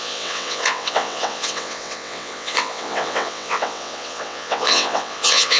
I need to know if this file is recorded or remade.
remade